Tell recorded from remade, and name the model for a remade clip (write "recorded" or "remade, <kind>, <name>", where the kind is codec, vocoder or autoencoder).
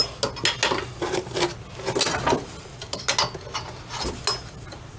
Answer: recorded